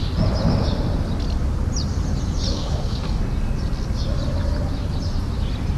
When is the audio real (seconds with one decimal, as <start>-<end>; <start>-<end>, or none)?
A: 0.0-2.5; 3.2-5.8